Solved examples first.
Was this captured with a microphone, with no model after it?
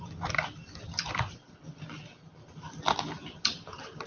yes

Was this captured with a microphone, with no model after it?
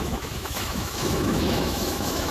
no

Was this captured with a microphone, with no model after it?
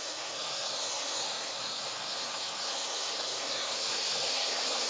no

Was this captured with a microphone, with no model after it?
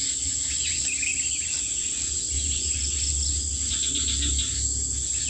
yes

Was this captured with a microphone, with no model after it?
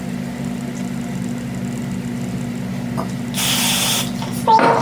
yes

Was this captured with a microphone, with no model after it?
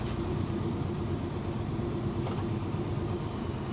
yes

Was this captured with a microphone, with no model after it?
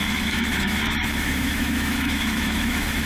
no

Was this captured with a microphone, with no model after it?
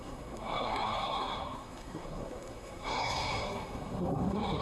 no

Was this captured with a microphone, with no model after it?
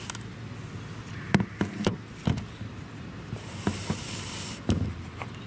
yes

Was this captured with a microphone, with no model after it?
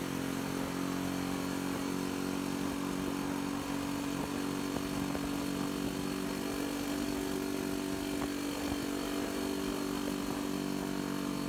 yes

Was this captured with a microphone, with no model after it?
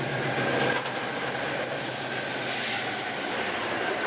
yes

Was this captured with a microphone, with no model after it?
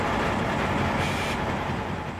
yes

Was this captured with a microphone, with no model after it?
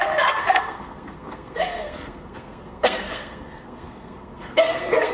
no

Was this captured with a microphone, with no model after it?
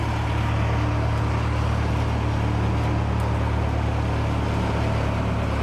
yes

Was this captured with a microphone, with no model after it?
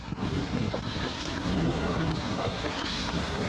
no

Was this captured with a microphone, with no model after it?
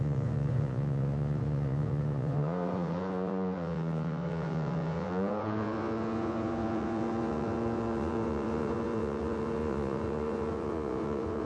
no